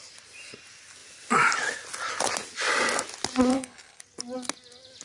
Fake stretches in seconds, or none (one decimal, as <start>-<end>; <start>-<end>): 3.5-4.0